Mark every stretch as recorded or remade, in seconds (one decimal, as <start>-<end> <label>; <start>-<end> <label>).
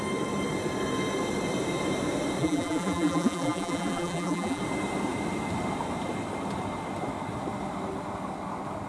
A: 0.0-2.4 recorded; 2.4-4.6 remade; 4.6-8.9 recorded